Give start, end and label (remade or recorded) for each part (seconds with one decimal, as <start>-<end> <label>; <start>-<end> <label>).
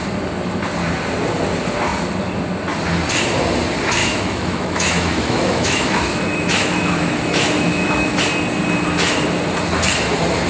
0.0-4.0 recorded; 4.0-8.2 remade; 8.2-10.5 recorded